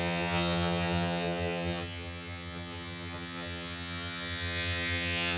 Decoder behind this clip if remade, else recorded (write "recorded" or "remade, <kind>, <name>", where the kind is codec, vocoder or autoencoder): remade, vocoder, HiFi-GAN